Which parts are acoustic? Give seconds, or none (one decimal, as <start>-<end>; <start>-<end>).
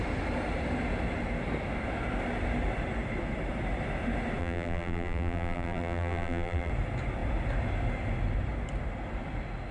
0.0-4.4; 6.7-9.7